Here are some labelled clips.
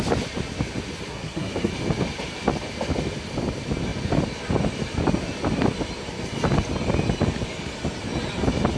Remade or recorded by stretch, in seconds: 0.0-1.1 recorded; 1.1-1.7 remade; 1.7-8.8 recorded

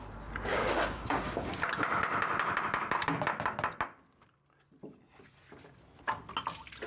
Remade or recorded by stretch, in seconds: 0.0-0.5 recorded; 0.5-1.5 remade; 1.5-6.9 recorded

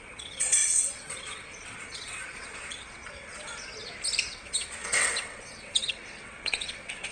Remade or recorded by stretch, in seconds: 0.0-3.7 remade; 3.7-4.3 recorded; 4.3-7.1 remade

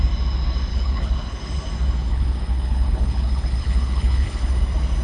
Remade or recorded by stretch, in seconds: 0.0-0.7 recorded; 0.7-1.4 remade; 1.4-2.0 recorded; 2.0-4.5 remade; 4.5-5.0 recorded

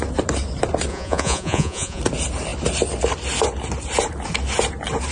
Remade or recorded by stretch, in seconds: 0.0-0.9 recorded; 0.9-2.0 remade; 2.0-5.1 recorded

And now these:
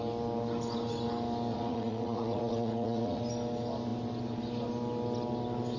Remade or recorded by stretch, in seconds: 0.0-1.5 recorded; 1.5-3.2 remade; 3.2-5.8 recorded